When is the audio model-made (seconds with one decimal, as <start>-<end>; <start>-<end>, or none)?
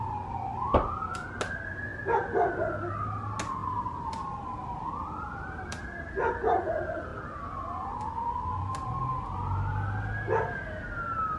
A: 3.6-6.1